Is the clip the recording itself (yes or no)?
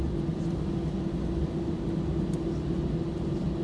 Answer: yes